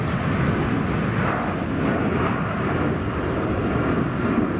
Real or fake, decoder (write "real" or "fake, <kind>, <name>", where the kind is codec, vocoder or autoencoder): real